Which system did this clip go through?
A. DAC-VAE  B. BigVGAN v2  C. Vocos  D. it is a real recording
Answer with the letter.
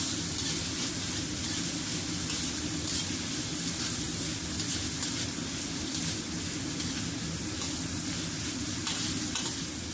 D